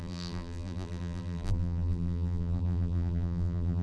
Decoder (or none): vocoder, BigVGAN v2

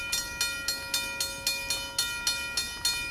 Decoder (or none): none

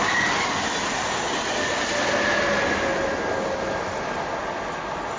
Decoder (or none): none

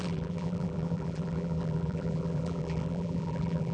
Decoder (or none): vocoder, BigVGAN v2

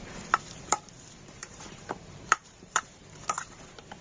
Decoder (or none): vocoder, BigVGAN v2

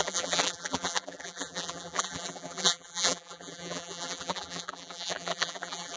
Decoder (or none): vocoder, BigVGAN v2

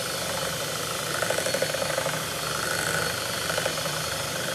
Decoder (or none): vocoder, BigVGAN v2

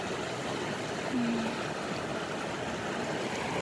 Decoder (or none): none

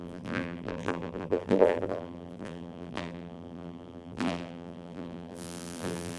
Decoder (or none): vocoder, BigVGAN v2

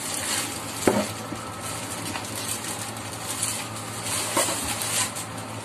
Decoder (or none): none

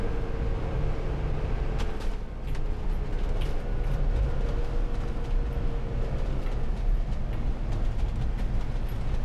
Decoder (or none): none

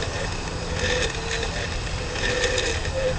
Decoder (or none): none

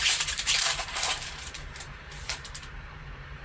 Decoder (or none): vocoder, BigVGAN v2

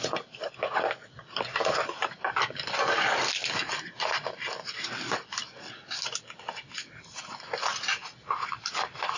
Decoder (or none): none